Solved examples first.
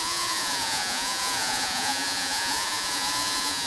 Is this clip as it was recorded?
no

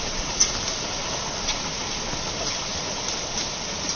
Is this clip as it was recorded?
yes